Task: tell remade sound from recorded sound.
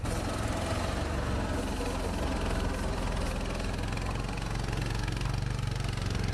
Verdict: recorded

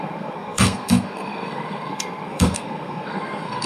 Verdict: remade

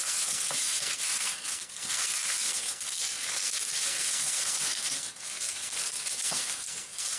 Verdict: remade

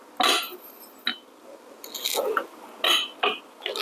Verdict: recorded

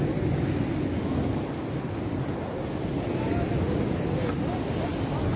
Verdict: recorded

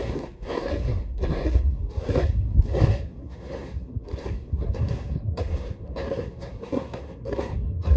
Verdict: remade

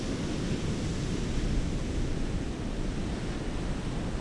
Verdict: recorded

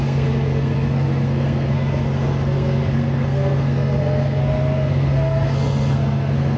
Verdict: remade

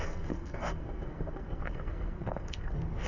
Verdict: remade